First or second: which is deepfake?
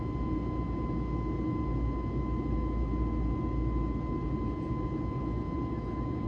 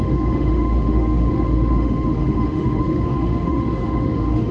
second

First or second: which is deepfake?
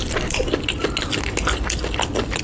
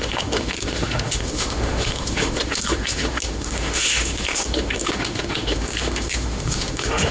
second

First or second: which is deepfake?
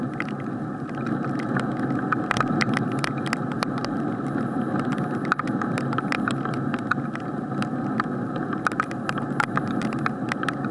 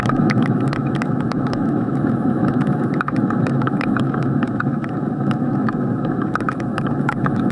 second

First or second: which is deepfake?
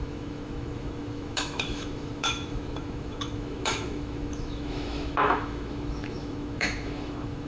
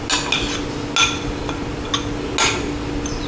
first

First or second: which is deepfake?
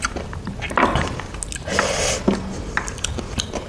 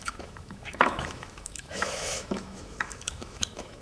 second